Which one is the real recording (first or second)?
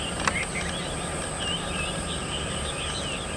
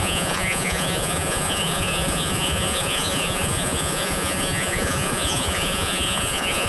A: first